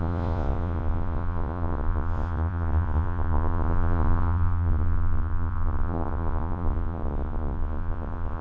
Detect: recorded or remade remade